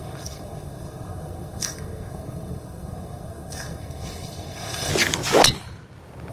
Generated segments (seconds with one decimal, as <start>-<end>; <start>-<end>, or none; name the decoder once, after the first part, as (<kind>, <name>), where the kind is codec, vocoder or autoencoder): 0.0-4.9 (codec, SNAC)